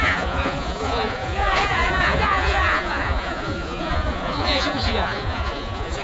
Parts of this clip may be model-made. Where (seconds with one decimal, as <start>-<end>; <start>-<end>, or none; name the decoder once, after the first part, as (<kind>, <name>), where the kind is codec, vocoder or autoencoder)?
0.0-6.0 (vocoder, Vocos)